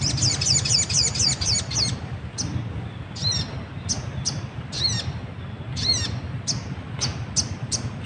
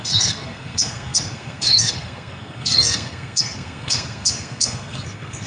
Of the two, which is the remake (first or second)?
second